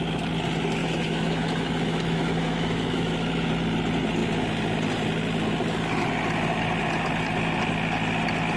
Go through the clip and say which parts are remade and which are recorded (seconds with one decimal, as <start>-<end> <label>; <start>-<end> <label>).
0.0-0.8 recorded; 0.8-3.5 remade; 3.5-8.6 recorded